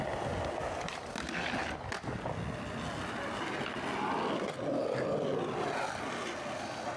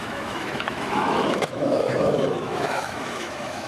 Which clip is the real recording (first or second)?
first